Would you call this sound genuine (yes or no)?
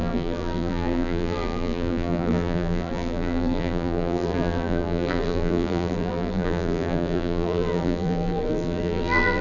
no